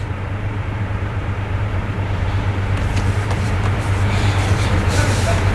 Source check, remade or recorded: remade